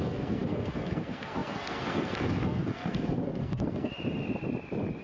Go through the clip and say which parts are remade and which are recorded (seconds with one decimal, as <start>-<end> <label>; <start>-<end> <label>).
0.0-3.9 remade; 3.9-5.0 recorded

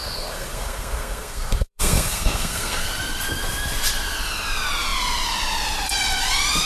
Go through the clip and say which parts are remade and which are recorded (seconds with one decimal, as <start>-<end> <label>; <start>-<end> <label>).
0.0-2.9 remade; 2.9-6.7 recorded

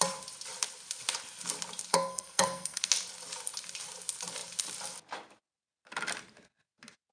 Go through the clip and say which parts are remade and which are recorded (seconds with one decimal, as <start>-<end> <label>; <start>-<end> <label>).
0.0-1.9 recorded; 1.9-2.9 remade; 2.9-7.1 recorded

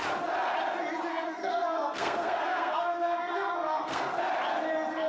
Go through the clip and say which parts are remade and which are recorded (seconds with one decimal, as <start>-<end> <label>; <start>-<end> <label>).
0.0-1.1 recorded; 1.1-4.2 remade; 4.2-5.1 recorded

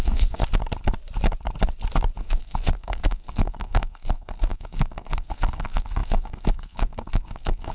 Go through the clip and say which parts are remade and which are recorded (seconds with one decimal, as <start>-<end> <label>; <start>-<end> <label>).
0.0-0.4 remade; 0.4-2.2 recorded; 2.2-7.7 remade

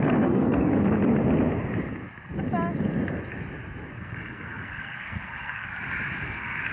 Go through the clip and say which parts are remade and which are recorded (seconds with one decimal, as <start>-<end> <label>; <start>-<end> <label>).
0.0-0.7 remade; 0.7-3.9 recorded; 3.9-5.7 remade; 5.7-6.2 recorded; 6.2-6.7 remade

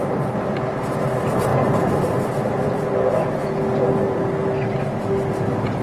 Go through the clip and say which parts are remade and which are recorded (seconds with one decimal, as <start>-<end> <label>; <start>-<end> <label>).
0.0-5.8 recorded

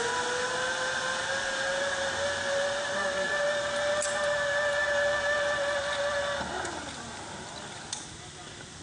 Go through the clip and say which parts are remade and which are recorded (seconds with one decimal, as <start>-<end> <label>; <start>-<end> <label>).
0.0-8.8 recorded